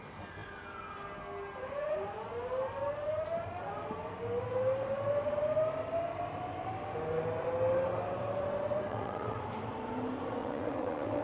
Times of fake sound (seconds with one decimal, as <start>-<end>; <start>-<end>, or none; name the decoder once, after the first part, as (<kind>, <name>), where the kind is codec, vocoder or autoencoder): 8.9-9.4 (vocoder, WaveNeXt); 10.4-11.2